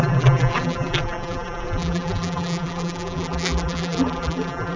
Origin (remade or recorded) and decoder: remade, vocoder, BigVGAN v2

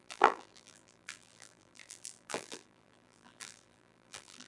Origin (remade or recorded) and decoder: remade, vocoder, BigVGAN v2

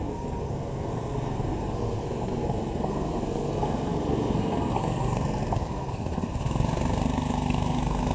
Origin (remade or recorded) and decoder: remade, codec, SNAC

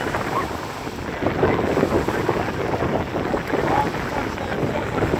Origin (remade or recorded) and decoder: recorded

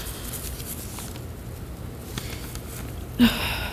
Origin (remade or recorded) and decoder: recorded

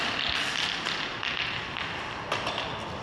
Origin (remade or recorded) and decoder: recorded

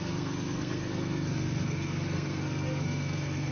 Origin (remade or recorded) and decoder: remade, codec, SNAC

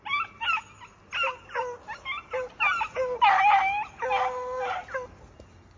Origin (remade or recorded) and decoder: recorded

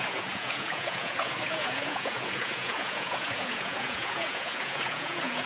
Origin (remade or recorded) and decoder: remade, vocoder, Vocos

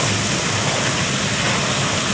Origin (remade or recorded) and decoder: recorded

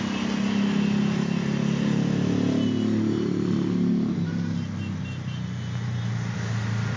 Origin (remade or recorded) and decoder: recorded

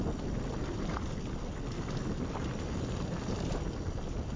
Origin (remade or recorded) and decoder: recorded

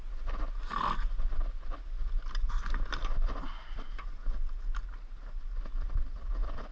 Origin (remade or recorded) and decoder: recorded